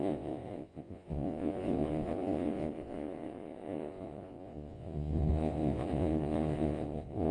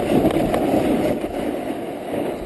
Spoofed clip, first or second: first